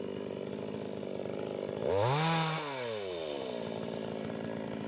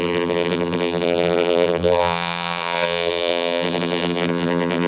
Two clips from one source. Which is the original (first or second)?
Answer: first